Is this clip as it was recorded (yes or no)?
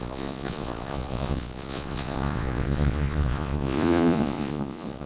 no